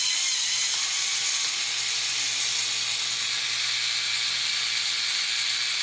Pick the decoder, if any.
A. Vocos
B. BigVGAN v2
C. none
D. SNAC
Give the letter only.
C